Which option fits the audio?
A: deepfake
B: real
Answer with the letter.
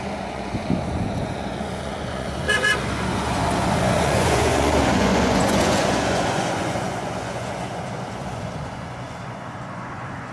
A